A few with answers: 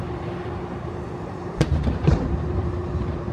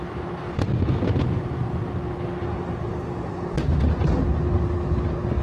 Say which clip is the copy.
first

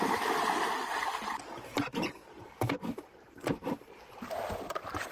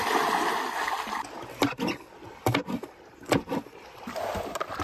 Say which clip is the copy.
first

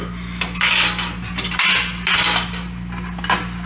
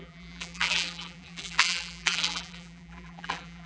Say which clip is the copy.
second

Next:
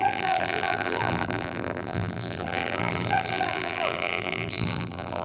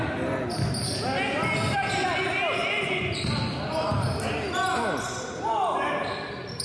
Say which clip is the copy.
first